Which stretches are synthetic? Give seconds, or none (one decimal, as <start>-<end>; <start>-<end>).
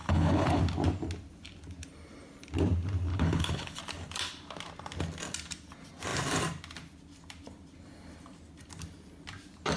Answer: 0.0-0.6; 3.1-3.8